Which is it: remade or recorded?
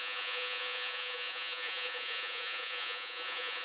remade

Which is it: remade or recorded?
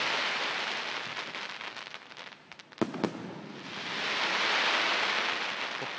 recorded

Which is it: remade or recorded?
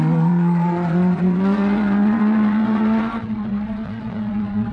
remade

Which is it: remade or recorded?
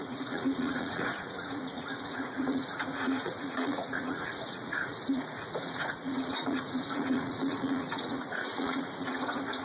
remade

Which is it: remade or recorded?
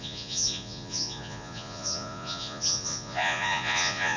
remade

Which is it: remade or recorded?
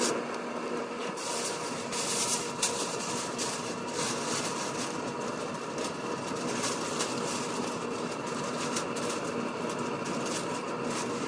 recorded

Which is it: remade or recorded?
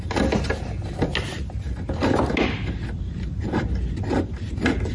recorded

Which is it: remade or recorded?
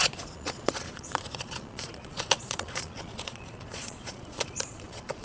remade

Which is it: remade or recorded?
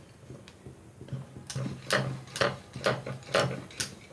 recorded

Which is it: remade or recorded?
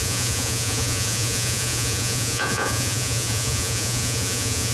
remade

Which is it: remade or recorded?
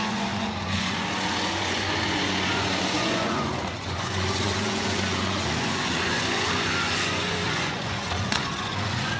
remade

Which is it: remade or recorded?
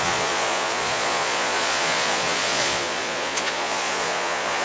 remade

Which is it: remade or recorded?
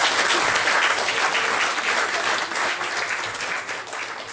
recorded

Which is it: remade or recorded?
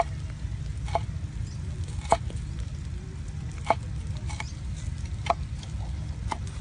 recorded